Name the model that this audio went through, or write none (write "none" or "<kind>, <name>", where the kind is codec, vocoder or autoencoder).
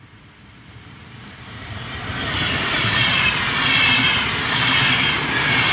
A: vocoder, BigVGAN v2